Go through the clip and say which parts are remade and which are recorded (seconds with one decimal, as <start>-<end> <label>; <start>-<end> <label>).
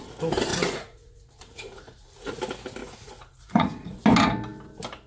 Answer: 0.0-0.5 recorded; 0.5-2.3 remade; 2.3-2.8 recorded; 2.8-4.0 remade; 4.0-5.1 recorded